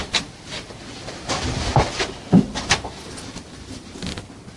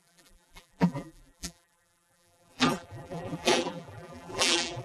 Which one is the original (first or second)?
first